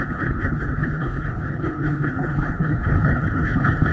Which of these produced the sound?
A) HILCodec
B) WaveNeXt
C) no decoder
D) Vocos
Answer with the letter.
A